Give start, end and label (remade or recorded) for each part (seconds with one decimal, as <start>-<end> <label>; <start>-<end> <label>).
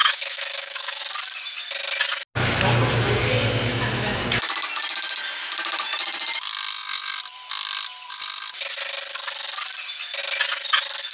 0.0-1.0 remade; 1.0-3.7 recorded; 3.7-4.2 remade; 4.2-11.1 recorded